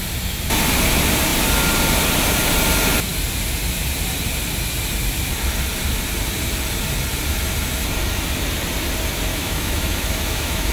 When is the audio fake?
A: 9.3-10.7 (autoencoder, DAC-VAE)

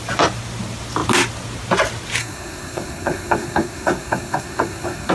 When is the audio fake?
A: 2.2-5.1 (codec, SNAC)

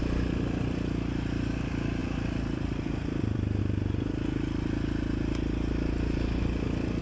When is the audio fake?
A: 2.0-3.6 (vocoder, BigVGAN v2)

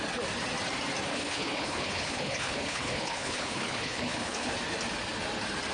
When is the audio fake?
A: 1.1-4.5 (codec, HILCodec)

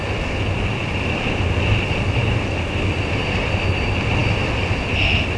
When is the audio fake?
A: none

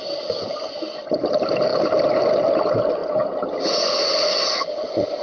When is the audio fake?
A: none

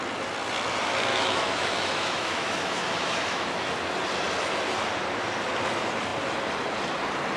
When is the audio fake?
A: 1.1-3.7 (autoencoder, DAC-VAE)

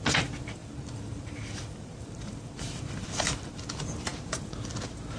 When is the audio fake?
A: 0.6-3.5 (vocoder, BigVGAN v2)